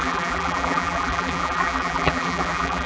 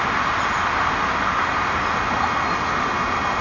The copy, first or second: first